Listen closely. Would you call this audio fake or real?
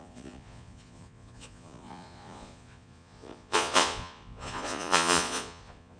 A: fake